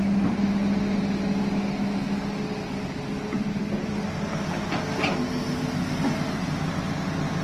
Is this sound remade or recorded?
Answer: recorded